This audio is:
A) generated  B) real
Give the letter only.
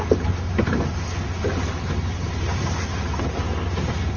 B